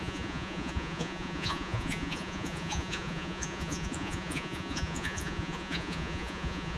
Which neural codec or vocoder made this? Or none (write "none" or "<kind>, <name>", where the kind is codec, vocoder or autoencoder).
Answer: vocoder, Vocos